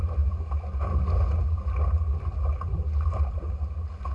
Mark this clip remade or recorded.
recorded